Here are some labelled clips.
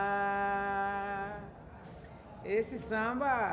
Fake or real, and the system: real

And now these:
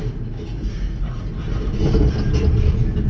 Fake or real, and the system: real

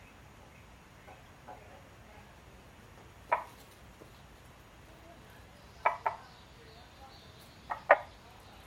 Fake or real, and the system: real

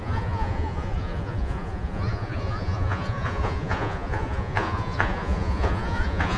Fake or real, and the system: fake, vocoder, Vocos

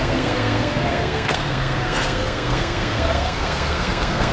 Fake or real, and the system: fake, codec, SNAC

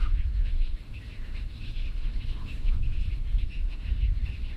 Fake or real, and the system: fake, autoencoder, DAC-VAE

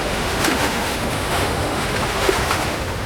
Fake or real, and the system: fake, autoencoder, DAC-VAE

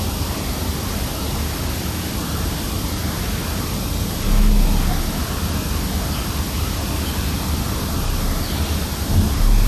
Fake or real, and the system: real